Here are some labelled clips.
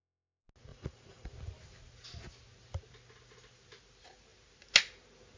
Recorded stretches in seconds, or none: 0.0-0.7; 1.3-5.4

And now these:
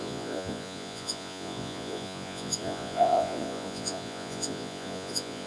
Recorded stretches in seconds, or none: none

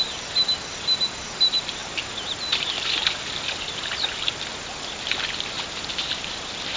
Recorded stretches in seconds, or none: 0.0-6.8

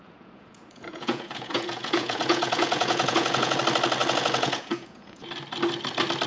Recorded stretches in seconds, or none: 3.6-4.0; 5.3-6.3

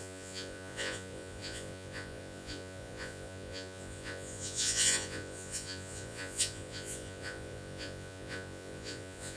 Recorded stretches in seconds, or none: none

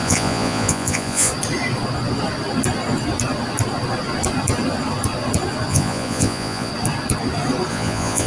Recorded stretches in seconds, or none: 1.3-5.7; 6.7-7.7